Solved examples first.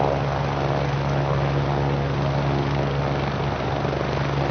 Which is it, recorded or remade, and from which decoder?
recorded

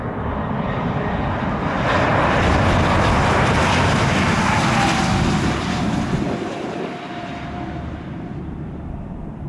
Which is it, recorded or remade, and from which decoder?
recorded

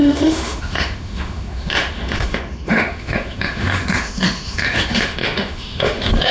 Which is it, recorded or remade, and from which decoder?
remade, autoencoder, DAC-VAE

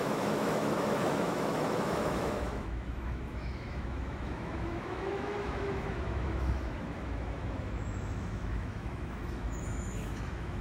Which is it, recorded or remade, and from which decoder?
remade, autoencoder, DAC-VAE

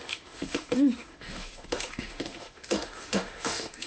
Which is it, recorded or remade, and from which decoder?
remade, autoencoder, DAC-VAE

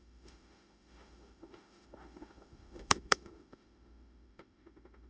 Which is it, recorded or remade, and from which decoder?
remade, autoencoder, DAC-VAE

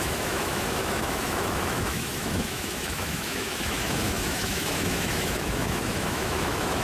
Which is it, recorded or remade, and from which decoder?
remade, autoencoder, DAC-VAE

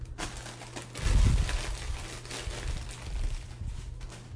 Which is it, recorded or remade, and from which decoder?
recorded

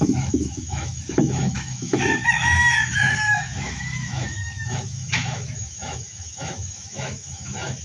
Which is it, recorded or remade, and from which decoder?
remade, autoencoder, DAC-VAE